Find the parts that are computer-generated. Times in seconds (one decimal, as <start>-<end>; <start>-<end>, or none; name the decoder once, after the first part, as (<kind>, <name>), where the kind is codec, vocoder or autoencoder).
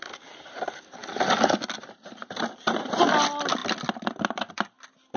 none